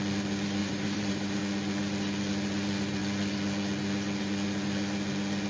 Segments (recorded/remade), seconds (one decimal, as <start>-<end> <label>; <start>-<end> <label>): 0.0-0.6 recorded; 0.6-1.4 remade; 1.4-5.5 recorded